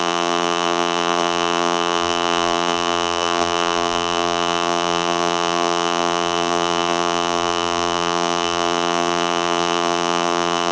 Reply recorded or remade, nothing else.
remade